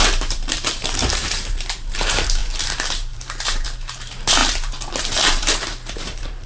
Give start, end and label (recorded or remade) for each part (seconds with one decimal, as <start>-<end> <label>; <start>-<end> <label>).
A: 0.0-6.5 remade